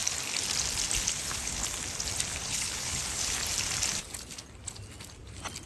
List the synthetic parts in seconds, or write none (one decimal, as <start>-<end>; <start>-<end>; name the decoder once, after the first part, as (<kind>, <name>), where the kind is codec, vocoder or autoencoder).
1.0-1.6 (codec, HILCodec); 2.3-3.4